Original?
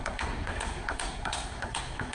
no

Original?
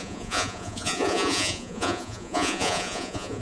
no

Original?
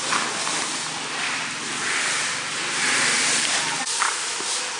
no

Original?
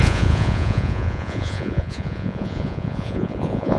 no